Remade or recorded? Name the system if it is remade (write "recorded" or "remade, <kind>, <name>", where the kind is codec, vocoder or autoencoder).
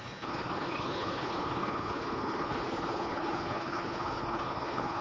remade, codec, HILCodec